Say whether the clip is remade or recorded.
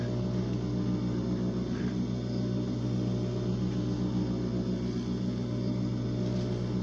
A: recorded